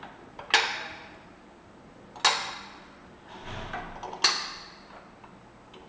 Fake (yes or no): no